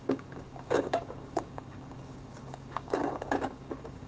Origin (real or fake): fake